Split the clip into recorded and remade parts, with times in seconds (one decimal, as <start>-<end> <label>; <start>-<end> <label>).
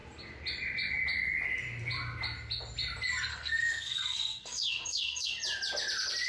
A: 0.0-3.3 recorded; 3.3-5.3 remade; 5.3-6.3 recorded